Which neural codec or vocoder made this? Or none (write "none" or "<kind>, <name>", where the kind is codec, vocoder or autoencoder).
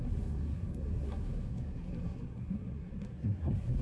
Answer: codec, SNAC